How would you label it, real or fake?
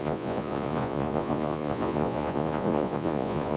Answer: fake